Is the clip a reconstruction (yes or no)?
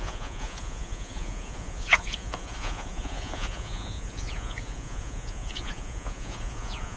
yes